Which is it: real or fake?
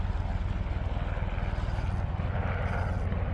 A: real